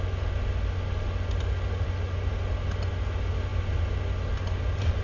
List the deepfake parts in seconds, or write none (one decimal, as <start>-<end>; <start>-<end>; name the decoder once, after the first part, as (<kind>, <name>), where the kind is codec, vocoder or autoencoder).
none